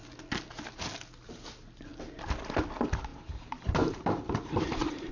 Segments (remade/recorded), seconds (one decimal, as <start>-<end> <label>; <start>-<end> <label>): 0.0-3.1 recorded; 3.1-5.1 remade